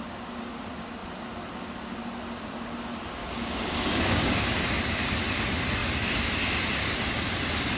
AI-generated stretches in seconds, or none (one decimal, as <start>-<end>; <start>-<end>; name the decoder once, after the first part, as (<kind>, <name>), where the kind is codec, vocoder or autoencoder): 3.2-4.6 (codec, DAC)